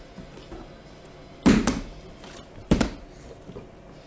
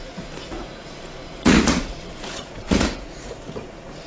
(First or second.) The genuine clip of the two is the first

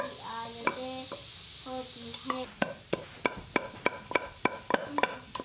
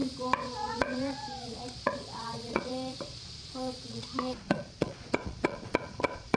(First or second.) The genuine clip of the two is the first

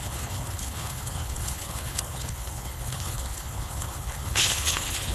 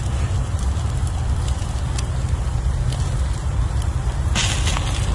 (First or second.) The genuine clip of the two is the second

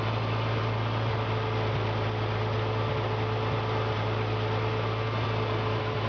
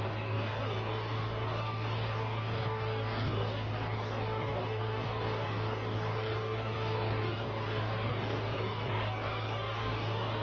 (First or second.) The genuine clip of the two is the first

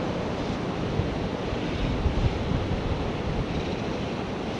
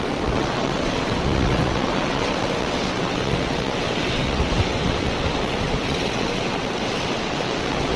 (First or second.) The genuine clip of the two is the first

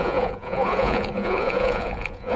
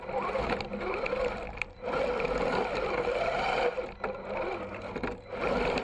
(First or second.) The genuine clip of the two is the second